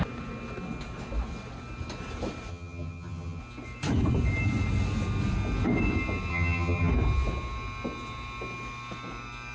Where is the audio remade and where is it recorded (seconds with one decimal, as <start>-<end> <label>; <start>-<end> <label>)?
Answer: 0.0-2.5 recorded; 2.5-3.4 remade; 3.4-6.3 recorded; 6.3-6.9 remade; 6.9-9.5 recorded

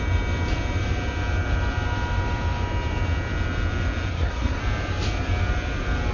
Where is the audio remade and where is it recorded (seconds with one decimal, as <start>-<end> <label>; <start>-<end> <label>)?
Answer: 0.0-4.1 recorded; 4.1-4.6 remade; 4.6-6.1 recorded

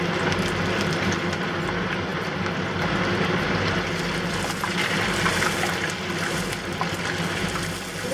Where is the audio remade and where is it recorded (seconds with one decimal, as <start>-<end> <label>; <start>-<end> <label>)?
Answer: 0.0-8.1 recorded

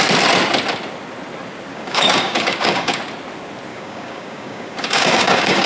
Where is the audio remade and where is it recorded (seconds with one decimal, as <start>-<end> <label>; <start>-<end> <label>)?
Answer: 0.0-1.7 recorded; 1.7-3.0 remade; 3.0-3.7 recorded; 3.7-5.7 remade

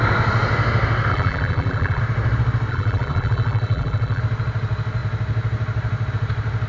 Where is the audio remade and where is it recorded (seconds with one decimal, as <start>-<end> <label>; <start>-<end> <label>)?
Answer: 0.0-1.1 recorded; 1.1-2.0 remade; 2.0-2.7 recorded; 2.7-4.2 remade; 4.2-6.7 recorded

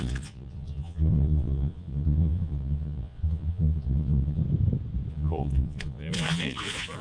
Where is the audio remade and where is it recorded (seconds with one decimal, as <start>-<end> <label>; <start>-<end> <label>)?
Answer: 0.0-4.4 remade; 4.4-5.1 recorded; 5.1-7.0 remade

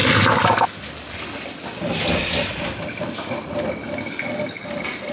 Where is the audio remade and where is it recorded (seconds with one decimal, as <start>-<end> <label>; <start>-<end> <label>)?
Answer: 0.0-5.1 recorded

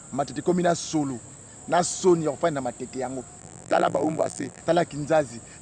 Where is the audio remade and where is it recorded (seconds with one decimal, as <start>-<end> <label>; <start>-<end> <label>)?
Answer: 0.0-3.4 recorded; 3.4-4.6 remade; 4.6-5.6 recorded